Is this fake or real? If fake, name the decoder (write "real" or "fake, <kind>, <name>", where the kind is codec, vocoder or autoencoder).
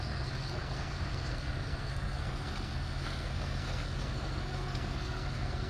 fake, codec, SNAC